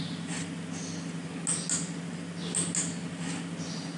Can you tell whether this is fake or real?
real